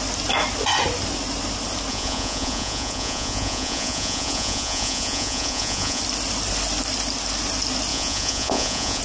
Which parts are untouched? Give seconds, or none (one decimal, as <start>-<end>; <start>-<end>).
0.0-1.9; 6.0-7.9